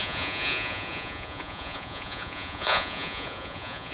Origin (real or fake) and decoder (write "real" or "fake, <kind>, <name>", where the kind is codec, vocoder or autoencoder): fake, vocoder, Vocos